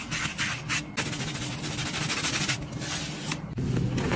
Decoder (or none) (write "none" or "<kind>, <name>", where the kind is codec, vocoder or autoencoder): none